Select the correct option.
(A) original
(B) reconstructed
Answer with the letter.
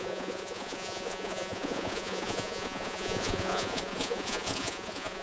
B